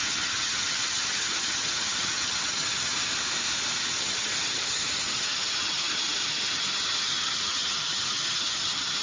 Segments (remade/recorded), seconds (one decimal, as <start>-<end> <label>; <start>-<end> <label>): 0.0-3.1 remade; 3.1-3.9 recorded; 3.9-9.0 remade